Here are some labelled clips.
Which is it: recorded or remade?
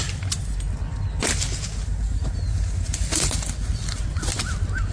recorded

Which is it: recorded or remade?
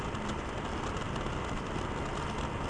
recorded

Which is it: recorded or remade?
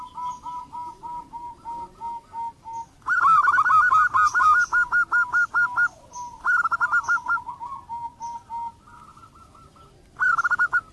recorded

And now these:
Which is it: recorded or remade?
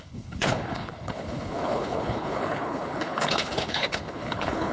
remade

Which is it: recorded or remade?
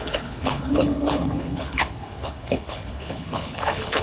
remade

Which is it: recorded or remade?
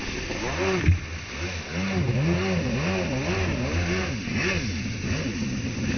recorded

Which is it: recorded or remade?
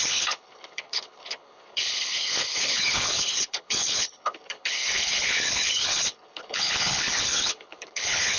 remade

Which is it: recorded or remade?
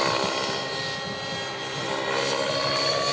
recorded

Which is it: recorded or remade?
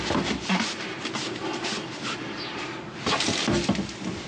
recorded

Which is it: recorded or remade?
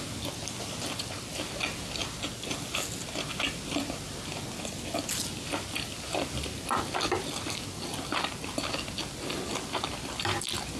recorded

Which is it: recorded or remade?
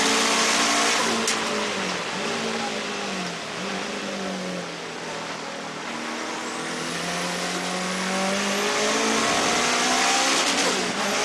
recorded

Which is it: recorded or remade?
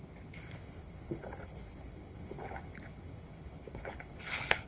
remade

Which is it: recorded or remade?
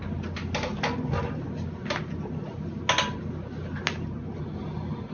recorded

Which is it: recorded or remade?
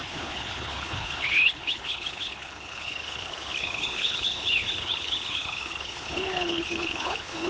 remade